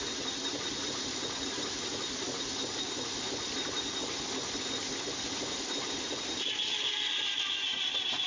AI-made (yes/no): no